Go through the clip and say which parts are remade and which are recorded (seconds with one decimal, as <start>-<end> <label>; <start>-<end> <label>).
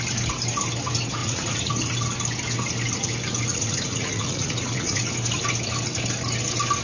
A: 0.0-1.2 recorded; 1.2-1.7 remade; 1.7-3.5 recorded; 3.5-5.0 remade; 5.0-6.8 recorded